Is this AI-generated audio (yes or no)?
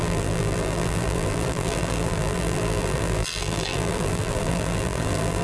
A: yes